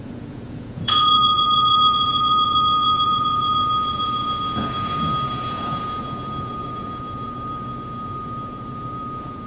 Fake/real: fake